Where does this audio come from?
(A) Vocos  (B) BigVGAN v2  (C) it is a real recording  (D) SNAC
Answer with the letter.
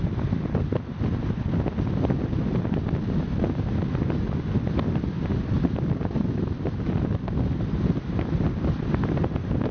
C